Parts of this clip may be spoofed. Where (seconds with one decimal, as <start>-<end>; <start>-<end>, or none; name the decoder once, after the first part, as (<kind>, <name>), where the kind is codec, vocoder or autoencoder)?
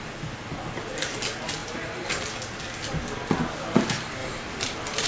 1.6-2.3 (vocoder, BigVGAN v2); 4.2-5.1